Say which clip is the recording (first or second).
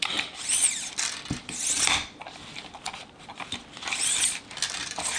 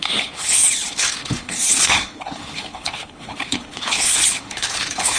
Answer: first